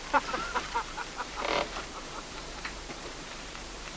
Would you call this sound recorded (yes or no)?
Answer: no